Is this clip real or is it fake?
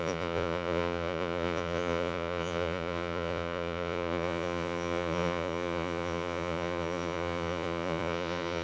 fake